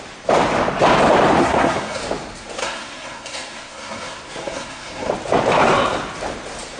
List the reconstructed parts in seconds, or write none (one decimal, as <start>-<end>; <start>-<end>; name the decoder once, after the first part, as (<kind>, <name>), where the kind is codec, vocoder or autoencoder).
1.4-2.0 (codec, SNAC); 2.6-5.1